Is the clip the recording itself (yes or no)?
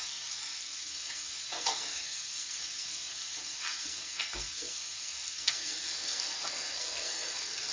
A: no